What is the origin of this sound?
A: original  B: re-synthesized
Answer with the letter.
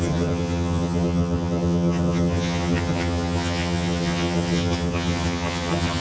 B